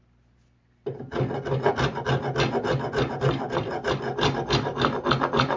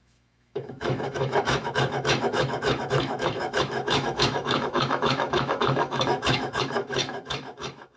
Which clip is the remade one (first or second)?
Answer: second